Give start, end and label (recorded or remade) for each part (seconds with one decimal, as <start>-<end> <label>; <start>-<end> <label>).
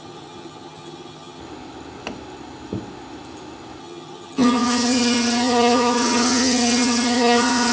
0.0-1.4 remade; 1.4-3.8 recorded; 3.8-7.7 remade